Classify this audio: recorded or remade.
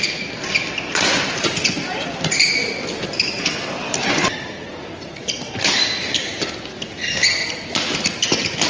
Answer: recorded